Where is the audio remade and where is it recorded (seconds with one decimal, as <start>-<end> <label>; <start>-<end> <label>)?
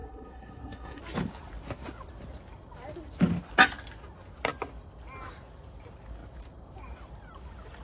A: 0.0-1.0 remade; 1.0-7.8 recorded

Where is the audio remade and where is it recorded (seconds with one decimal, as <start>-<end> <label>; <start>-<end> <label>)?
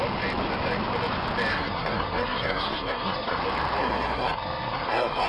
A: 0.0-1.5 recorded; 1.5-3.4 remade; 3.4-3.8 recorded; 3.8-5.3 remade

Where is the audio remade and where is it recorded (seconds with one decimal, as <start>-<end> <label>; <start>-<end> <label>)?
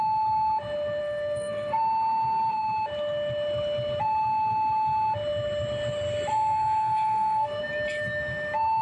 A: 0.0-1.0 recorded; 1.0-1.8 remade; 1.8-6.3 recorded; 6.3-7.6 remade; 7.6-8.8 recorded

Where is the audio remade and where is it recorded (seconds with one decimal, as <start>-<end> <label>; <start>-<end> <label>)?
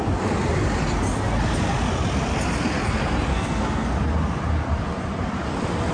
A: 0.0-3.3 recorded; 3.3-3.9 remade; 3.9-5.9 recorded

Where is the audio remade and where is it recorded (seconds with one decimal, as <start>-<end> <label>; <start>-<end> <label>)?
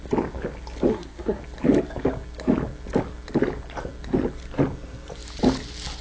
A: 0.0-0.9 recorded; 0.9-1.4 remade; 1.4-6.0 recorded